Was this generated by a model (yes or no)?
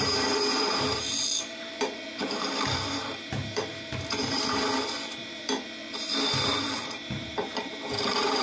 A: yes